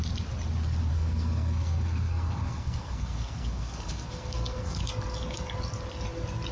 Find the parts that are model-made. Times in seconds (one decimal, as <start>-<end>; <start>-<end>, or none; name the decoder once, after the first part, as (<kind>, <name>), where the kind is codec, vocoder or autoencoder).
0.9-4.8 (codec, SNAC)